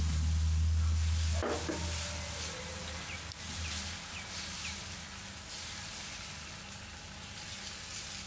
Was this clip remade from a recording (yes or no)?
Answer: no